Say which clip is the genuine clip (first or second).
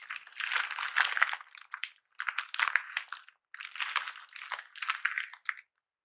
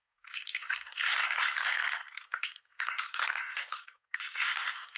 first